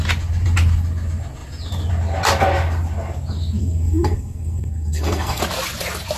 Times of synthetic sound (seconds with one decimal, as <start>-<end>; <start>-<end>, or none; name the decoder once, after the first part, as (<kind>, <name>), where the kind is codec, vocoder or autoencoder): 3.6-5.4 (codec, SNAC)